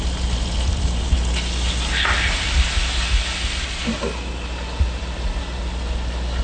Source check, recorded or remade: recorded